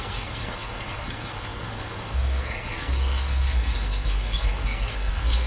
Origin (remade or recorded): remade